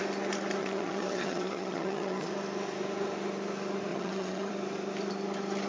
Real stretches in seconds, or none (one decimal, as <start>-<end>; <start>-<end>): 0.0-0.6; 2.3-3.9; 4.5-5.7